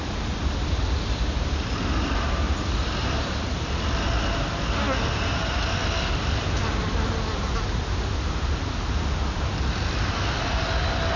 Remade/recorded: recorded